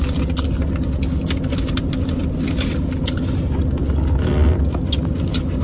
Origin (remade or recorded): recorded